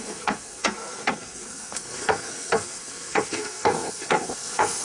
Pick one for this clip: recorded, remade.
remade